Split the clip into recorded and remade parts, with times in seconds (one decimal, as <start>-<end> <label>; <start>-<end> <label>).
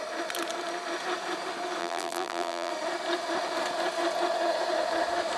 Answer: 0.0-1.8 recorded; 1.8-2.7 remade; 2.7-5.4 recorded